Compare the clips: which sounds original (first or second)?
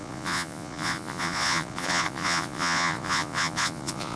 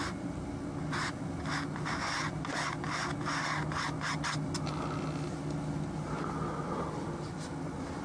second